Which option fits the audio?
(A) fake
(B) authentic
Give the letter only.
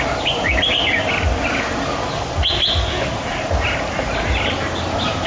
B